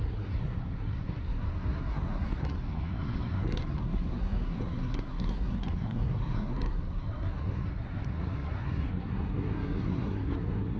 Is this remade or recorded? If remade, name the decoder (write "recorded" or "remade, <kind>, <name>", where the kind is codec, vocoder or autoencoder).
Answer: remade, codec, SNAC